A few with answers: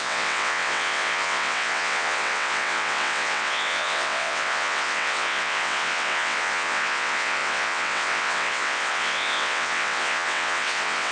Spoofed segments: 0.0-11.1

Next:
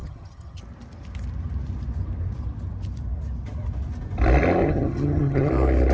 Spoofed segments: 0.0-0.6; 4.6-5.5